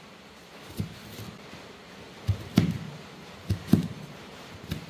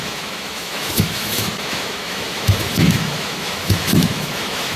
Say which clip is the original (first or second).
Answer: first